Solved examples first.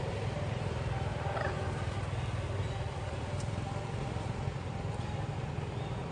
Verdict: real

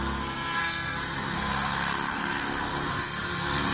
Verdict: fake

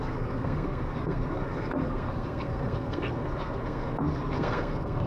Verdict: fake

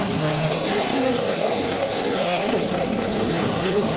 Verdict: fake